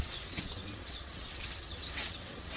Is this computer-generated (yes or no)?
yes